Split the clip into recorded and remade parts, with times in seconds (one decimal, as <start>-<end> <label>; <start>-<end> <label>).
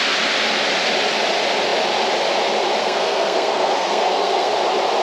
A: 0.0-2.8 recorded; 2.8-4.5 remade; 4.5-5.0 recorded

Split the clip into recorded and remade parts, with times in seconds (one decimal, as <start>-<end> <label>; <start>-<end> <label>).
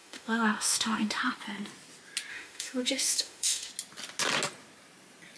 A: 0.0-1.2 remade; 1.2-2.3 recorded; 2.3-3.7 remade; 3.7-5.4 recorded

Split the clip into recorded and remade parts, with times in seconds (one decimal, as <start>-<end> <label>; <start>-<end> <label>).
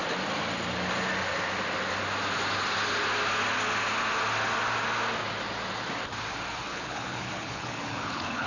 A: 0.0-6.7 recorded; 6.7-8.5 remade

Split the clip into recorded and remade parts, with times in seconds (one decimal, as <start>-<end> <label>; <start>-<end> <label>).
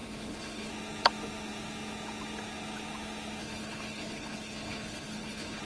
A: 0.0-0.7 remade; 0.7-3.4 recorded; 3.4-5.6 remade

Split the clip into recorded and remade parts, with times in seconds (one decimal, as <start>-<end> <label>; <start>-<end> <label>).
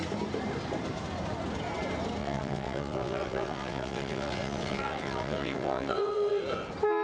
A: 0.0-2.2 recorded; 2.2-6.4 remade; 6.4-7.0 recorded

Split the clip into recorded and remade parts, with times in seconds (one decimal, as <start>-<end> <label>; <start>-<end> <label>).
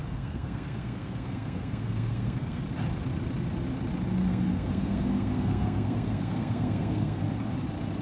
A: 0.0-2.6 remade; 2.6-4.3 recorded; 4.3-7.2 remade; 7.2-8.0 recorded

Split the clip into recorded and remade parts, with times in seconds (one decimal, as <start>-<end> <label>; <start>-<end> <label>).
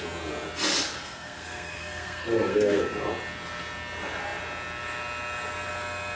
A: 0.0-1.0 recorded; 1.0-2.8 remade; 2.8-6.2 recorded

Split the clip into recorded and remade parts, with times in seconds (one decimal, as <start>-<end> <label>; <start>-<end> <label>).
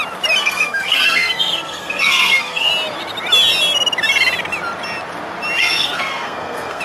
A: 0.0-0.4 recorded; 0.4-2.7 remade; 2.7-5.6 recorded; 5.6-6.8 remade